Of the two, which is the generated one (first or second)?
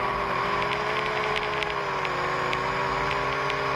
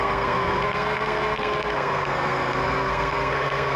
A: second